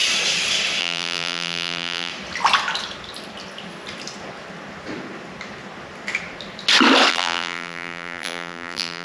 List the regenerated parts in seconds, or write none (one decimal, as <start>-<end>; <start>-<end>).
0.8-2.1; 7.1-9.0